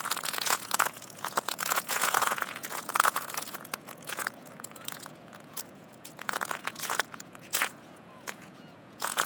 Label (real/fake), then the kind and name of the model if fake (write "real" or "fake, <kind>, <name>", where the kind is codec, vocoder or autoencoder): fake, vocoder, Vocos